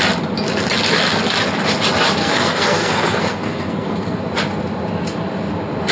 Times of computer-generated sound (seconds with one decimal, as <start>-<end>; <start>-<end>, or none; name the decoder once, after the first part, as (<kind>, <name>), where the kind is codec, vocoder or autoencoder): 2.2-4.2 (codec, SNAC)